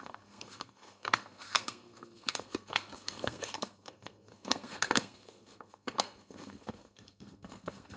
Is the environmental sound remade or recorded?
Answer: remade